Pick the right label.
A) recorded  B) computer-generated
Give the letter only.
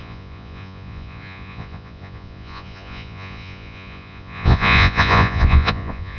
B